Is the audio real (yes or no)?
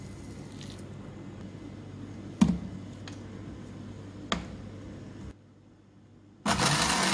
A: yes